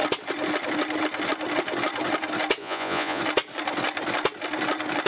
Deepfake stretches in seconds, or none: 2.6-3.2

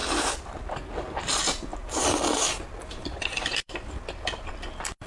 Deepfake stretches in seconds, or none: 0.0-0.9; 1.7-5.1

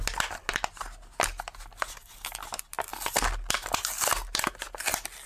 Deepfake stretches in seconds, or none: none

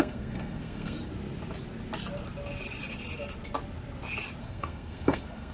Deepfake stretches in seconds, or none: 0.0-1.1; 4.4-5.5

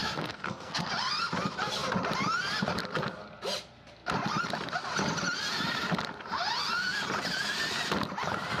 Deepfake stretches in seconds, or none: 0.0-0.9

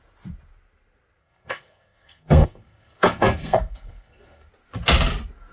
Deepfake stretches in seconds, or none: 1.2-4.5

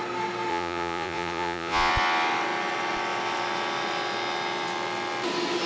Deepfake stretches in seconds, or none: 0.5-1.9